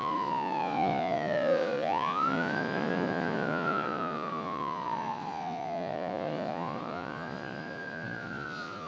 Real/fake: fake